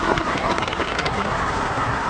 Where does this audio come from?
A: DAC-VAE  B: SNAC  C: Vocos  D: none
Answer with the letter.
B